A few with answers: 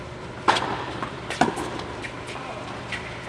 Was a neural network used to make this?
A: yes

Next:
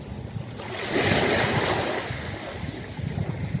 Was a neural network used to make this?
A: no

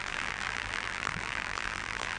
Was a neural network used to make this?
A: yes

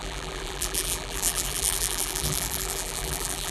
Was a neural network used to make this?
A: yes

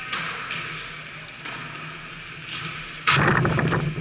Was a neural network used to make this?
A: no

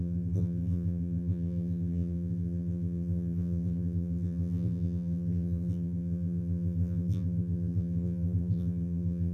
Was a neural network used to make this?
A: yes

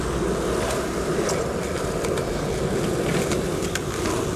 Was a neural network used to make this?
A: no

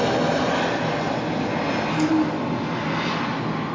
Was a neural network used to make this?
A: no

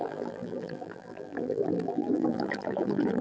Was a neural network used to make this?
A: yes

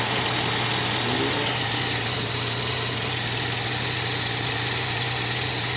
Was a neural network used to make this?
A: no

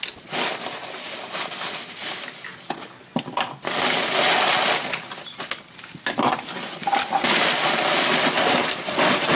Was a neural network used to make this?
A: no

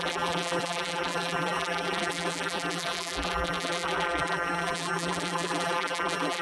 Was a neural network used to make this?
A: yes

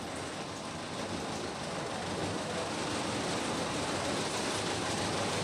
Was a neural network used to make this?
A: no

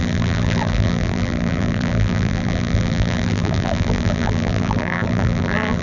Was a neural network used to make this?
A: yes